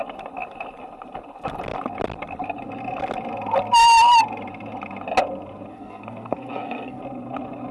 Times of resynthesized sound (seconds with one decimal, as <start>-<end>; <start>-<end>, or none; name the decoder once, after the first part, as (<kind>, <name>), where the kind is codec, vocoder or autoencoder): 5.7-7.0 (codec, SNAC)